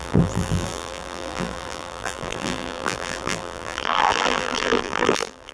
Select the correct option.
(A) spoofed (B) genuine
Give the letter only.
A